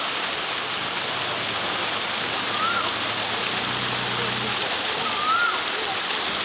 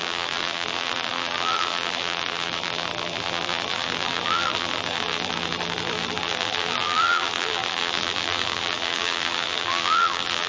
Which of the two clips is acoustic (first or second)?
first